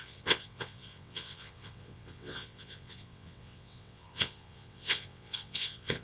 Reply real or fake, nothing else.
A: fake